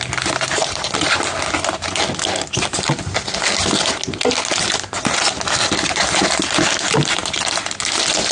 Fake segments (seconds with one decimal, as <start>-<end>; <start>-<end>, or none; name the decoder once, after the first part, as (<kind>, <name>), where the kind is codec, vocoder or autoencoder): none